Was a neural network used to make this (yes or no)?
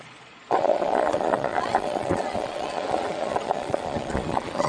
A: yes